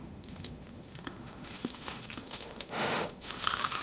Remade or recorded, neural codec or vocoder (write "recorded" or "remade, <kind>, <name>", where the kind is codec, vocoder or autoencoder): remade, autoencoder, DAC-VAE